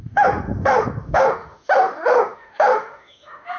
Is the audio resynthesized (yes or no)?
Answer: yes